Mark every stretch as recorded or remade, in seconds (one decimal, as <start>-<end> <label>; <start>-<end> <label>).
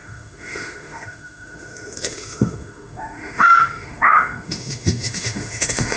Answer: 0.0-6.0 remade